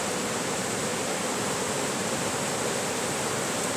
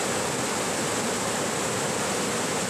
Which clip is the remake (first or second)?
first